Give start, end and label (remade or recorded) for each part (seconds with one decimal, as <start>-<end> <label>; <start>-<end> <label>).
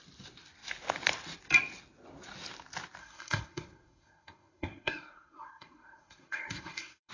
0.0-3.0 recorded; 3.0-7.1 remade